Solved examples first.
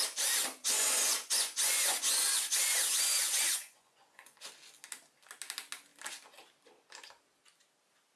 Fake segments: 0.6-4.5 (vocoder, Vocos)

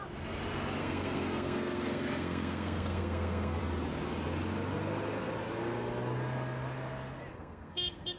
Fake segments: 0.8-3.6 (codec, SNAC); 7.3-8.2

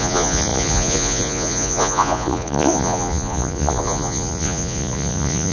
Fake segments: 0.0-5.5 (vocoder, Vocos)

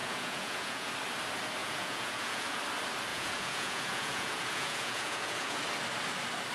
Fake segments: 0.0-0.9 (vocoder, Vocos); 1.6-2.6; 3.1-5.6